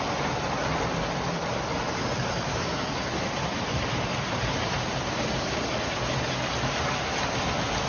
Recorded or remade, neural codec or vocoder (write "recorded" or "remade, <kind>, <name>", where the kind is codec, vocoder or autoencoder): recorded